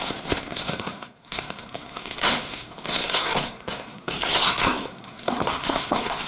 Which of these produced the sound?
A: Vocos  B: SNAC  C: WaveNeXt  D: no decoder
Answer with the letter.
B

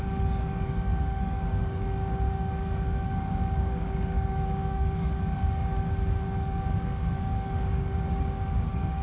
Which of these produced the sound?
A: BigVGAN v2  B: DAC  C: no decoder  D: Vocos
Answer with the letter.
B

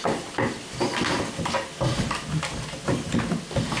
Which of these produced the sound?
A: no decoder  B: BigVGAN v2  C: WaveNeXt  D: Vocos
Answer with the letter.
A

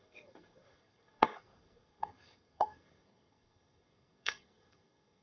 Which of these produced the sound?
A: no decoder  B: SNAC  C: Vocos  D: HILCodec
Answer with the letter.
B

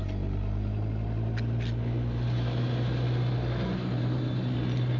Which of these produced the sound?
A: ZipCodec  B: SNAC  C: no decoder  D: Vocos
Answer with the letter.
C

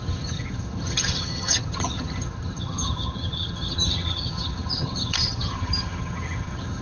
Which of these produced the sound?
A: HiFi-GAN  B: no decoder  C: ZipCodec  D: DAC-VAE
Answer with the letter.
A